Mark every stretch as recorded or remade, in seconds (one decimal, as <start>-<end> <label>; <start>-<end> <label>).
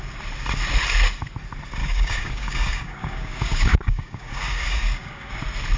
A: 0.0-1.8 recorded; 1.8-5.3 remade; 5.3-5.8 recorded